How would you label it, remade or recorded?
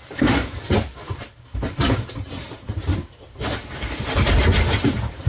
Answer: remade